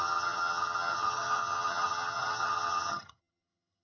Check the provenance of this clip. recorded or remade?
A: remade